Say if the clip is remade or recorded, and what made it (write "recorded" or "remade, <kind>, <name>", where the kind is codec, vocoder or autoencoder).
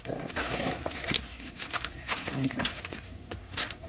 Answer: remade, codec, SNAC